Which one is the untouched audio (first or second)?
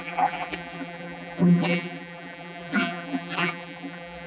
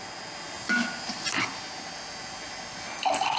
second